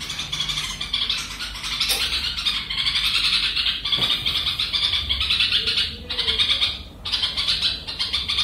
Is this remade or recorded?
recorded